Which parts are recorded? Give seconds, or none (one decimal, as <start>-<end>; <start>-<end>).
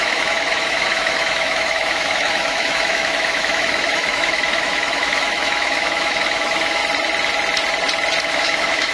6.8-8.2